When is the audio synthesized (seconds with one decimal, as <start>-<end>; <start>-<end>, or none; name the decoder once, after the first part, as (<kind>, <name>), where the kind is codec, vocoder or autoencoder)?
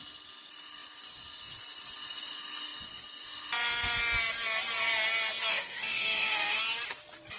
5.5-6.6 (codec, SNAC)